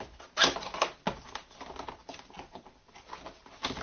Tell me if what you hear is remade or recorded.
recorded